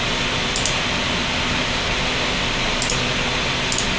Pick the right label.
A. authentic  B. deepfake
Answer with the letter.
A